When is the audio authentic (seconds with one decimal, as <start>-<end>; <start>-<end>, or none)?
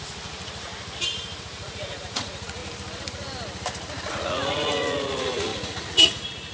0.7-1.4; 2.6-4.1